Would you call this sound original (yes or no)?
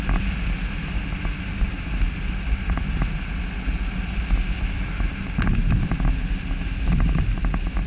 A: yes